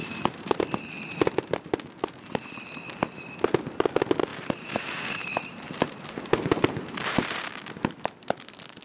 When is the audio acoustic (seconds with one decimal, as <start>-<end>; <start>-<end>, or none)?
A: 0.6-4.3; 7.4-8.8